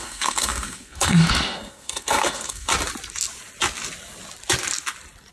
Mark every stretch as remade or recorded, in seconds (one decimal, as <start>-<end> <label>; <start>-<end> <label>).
0.0-2.7 remade; 2.7-5.3 recorded